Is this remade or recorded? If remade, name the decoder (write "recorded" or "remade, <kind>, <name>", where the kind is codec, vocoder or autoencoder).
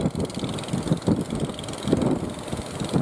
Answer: recorded